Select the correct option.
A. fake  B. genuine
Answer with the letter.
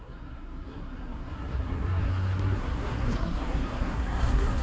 A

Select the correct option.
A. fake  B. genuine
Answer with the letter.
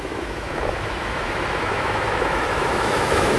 A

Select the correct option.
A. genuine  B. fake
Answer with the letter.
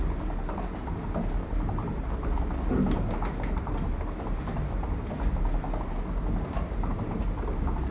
A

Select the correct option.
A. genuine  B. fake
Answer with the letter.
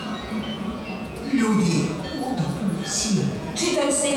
B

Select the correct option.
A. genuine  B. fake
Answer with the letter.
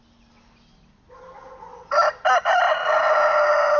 A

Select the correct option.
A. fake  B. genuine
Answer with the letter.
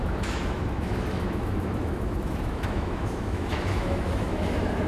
A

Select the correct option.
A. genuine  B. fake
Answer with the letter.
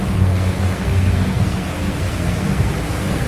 B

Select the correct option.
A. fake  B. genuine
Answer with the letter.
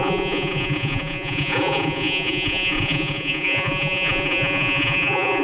A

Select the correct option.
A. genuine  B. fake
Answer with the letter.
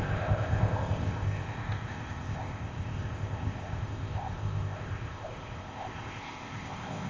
B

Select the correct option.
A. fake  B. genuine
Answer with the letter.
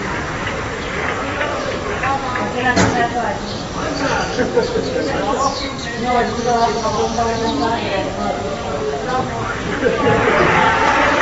A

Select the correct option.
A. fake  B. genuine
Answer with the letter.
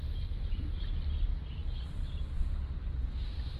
A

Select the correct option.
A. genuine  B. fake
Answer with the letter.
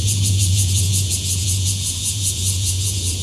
B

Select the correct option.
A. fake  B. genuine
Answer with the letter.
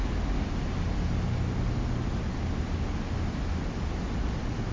B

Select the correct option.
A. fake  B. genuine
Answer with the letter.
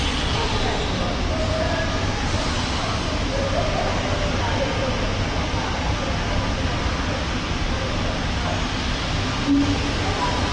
B